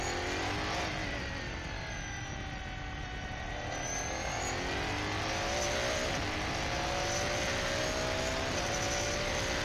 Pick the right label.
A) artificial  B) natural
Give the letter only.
B